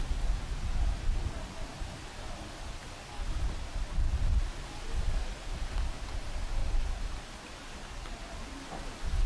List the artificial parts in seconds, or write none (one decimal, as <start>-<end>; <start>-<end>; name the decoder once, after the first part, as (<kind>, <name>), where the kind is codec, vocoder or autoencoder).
6.6-9.3 (vocoder, BigVGAN v2)